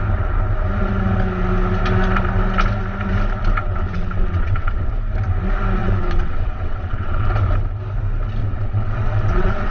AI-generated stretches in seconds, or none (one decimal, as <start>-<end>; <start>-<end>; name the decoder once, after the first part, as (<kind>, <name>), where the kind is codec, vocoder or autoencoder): 3.6-4.9 (vocoder, WaveNeXt); 5.8-7.3; 8.4-9.7